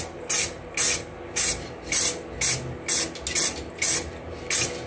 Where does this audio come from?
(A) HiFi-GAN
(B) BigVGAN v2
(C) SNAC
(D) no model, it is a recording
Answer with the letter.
D